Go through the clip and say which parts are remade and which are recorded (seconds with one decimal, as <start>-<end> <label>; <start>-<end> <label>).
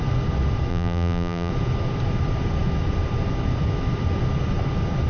0.0-0.7 recorded; 0.7-1.5 remade; 1.5-5.1 recorded